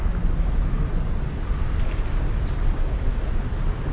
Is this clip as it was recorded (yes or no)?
yes